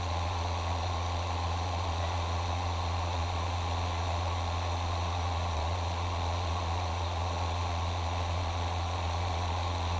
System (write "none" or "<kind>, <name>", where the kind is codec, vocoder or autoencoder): vocoder, Vocos